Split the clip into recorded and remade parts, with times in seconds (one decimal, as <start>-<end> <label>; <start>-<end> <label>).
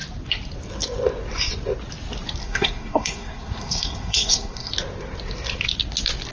0.0-2.4 recorded; 2.4-4.7 remade; 4.7-6.3 recorded